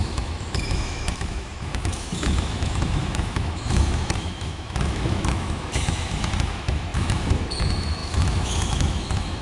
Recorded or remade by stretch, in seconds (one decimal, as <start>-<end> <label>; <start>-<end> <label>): 0.0-9.4 remade